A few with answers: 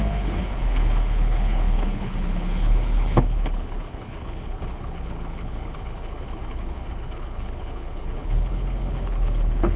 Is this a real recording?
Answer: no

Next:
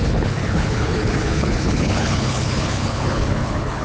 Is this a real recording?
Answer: no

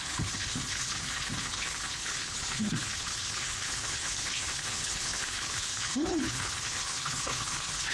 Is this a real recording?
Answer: no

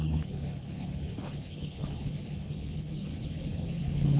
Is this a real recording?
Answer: no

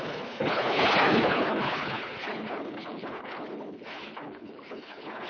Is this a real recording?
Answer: no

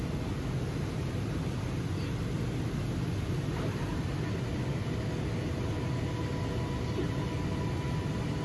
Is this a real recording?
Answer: yes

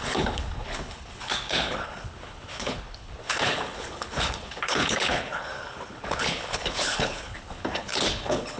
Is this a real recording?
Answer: no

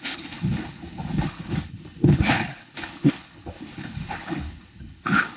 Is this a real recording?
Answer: no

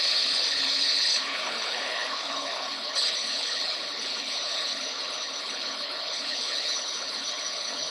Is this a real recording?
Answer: no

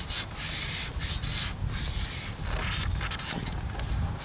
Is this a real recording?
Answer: yes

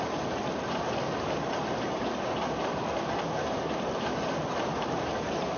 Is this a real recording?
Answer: yes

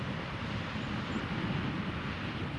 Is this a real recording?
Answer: yes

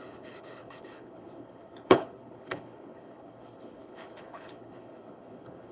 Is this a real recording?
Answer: no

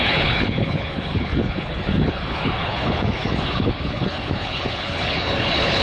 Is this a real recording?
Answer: no